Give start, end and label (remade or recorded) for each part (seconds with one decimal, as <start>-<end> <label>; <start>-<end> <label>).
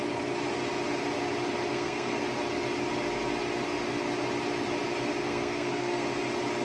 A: 0.0-1.7 recorded; 1.7-2.2 remade; 2.2-5.2 recorded; 5.2-6.1 remade; 6.1-6.6 recorded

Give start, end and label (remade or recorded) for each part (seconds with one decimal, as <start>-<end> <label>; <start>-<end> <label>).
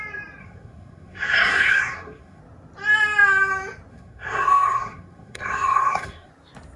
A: 0.0-0.4 recorded; 0.4-2.4 remade; 2.4-3.9 recorded; 3.9-6.3 remade; 6.3-6.8 recorded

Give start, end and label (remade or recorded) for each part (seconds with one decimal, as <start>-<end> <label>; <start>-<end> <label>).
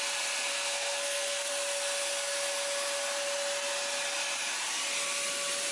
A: 0.0-0.5 recorded; 0.5-1.5 remade; 1.5-5.7 recorded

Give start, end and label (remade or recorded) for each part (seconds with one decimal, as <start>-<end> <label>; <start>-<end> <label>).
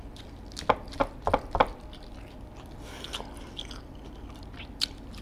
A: 0.0-5.2 recorded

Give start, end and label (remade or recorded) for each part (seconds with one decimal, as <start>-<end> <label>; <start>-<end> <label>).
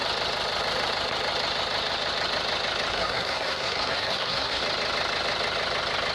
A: 0.0-2.9 recorded; 2.9-4.6 remade; 4.6-6.1 recorded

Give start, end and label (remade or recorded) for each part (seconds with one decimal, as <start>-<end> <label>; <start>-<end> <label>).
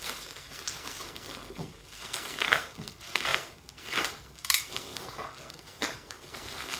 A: 0.0-6.8 remade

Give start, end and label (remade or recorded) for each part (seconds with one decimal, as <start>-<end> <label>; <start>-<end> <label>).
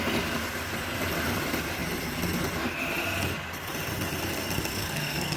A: 0.0-4.7 recorded; 4.7-5.4 remade